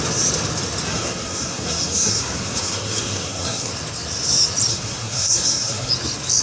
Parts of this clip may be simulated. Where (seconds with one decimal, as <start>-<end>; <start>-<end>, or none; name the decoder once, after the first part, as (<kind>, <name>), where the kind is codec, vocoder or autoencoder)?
0.9-3.7 (codec, SNAC); 4.7-5.9